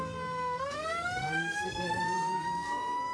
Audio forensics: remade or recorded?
remade